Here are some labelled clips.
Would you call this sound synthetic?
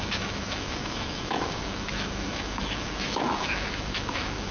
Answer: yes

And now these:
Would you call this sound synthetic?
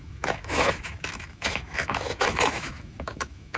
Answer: yes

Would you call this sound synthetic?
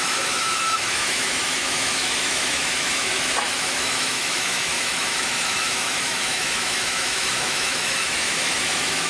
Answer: yes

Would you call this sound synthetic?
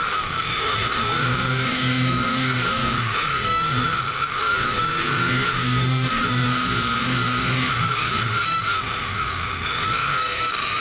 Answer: yes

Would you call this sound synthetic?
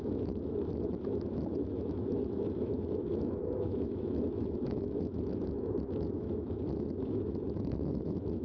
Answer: yes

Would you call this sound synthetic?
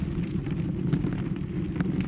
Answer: no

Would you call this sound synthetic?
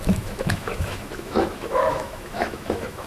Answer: yes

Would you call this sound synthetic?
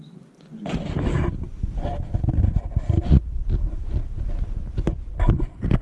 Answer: no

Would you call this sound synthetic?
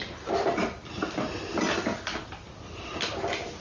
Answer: no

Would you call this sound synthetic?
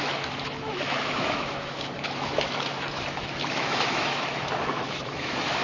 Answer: yes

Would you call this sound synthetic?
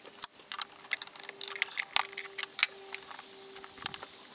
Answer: no